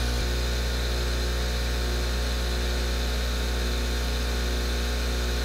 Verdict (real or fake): real